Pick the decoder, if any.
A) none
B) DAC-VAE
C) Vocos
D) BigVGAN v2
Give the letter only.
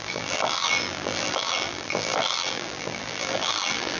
D